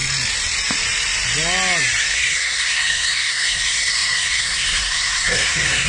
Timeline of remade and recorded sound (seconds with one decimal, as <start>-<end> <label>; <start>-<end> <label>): 0.0-2.0 recorded; 2.0-5.9 remade